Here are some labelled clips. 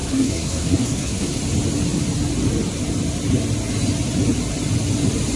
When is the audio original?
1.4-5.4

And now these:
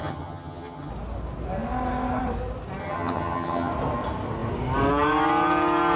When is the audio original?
0.9-2.8; 3.7-6.0

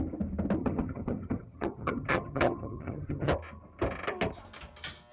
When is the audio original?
0.0-0.6; 3.3-5.1

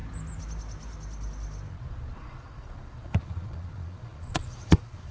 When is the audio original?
0.0-1.7

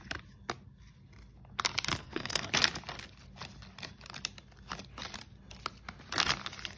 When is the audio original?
0.0-2.0; 2.5-6.8

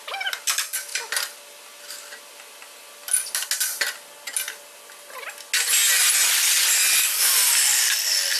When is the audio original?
0.0-8.4

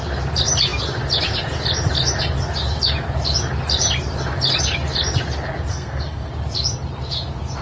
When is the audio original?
0.0-5.7; 6.3-7.6